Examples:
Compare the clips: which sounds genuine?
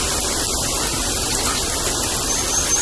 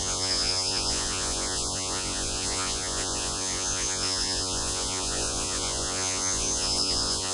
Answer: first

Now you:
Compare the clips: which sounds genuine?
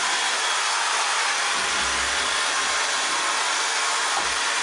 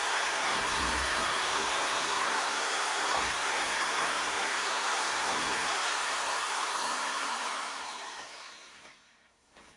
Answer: first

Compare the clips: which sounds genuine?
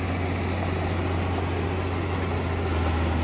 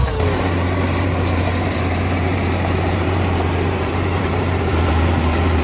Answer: first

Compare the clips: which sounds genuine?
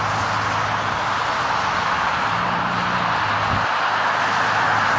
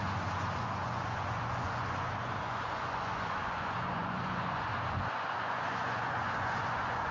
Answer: first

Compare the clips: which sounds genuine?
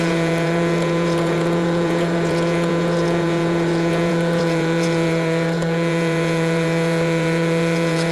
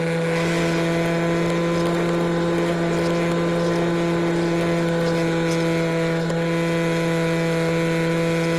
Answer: second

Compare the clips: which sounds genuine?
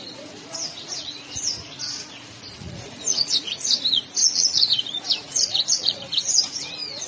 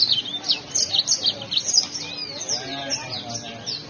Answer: second